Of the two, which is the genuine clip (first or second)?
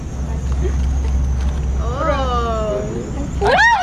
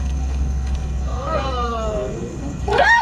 first